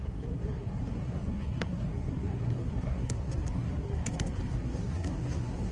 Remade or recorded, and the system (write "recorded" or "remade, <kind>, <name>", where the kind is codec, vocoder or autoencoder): remade, codec, SNAC